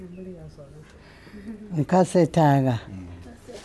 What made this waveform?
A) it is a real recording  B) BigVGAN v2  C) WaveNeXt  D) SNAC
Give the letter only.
A